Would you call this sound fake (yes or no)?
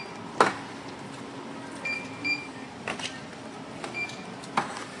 yes